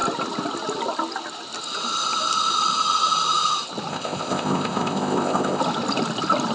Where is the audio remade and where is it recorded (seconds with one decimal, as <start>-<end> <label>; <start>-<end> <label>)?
0.0-3.9 recorded; 3.9-5.6 remade; 5.6-6.5 recorded